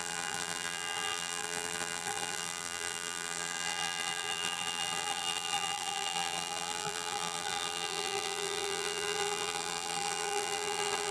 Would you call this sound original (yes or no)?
no